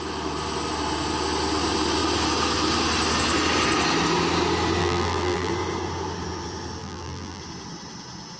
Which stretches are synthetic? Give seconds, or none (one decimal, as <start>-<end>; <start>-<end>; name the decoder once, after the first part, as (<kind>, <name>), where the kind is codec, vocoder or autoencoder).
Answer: 4.8-5.5 (vocoder, BigVGAN v2); 6.8-7.4